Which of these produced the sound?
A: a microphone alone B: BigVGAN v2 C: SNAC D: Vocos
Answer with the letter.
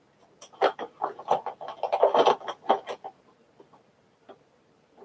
A